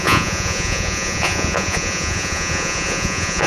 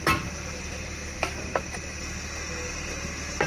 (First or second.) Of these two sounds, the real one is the second